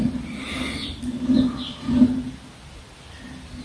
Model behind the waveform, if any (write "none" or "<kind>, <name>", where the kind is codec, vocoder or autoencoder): none